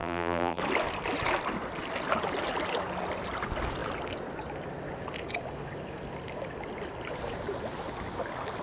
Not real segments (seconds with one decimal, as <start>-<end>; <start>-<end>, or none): 0.0-0.6